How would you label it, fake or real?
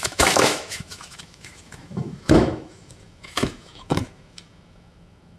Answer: fake